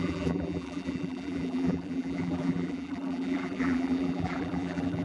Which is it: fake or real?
fake